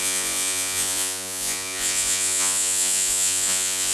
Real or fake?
fake